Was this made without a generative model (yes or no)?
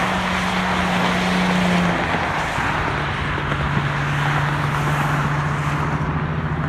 yes